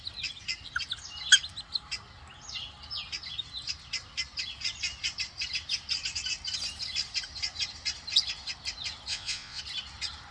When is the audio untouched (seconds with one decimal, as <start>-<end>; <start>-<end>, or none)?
0.0-9.1; 9.6-10.3